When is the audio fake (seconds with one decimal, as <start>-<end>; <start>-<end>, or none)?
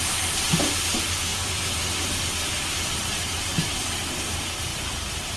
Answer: 1.3-1.8